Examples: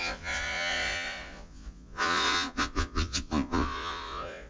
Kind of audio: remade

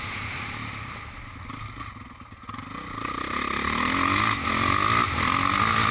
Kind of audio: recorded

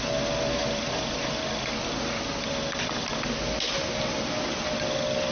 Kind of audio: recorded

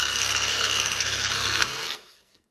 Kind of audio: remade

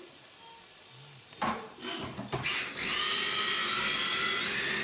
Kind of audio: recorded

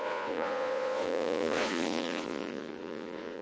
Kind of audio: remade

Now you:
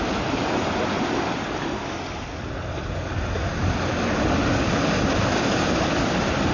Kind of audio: recorded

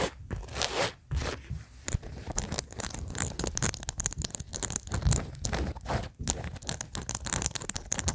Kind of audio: recorded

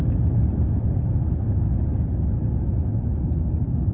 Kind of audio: recorded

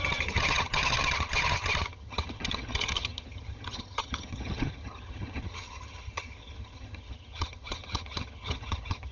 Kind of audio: remade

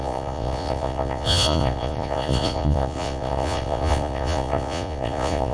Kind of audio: remade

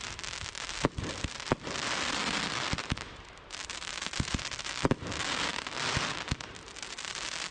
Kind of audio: remade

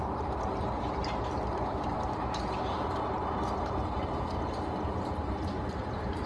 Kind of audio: remade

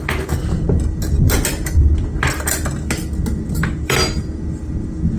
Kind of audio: recorded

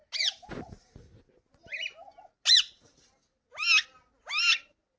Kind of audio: recorded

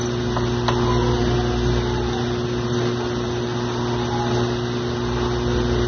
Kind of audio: recorded